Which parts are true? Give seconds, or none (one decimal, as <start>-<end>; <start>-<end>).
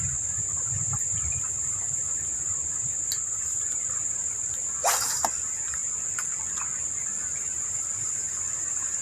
5.8-7.4